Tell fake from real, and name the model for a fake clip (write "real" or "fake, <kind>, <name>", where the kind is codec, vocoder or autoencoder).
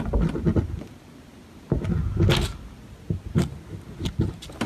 real